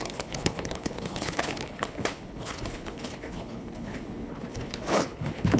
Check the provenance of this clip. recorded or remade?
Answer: remade